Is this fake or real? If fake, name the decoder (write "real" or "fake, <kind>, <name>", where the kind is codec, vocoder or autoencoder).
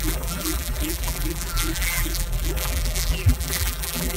fake, vocoder, BigVGAN v2